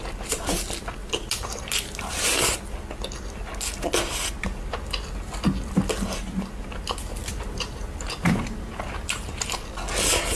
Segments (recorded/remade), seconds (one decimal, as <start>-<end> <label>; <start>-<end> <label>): 0.0-1.0 recorded; 1.0-2.6 remade; 2.6-7.0 recorded; 7.0-9.5 remade; 9.5-10.3 recorded